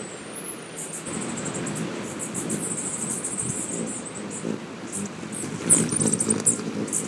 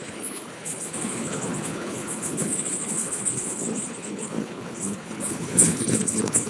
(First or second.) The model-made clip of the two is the second